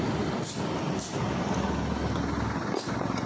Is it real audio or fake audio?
real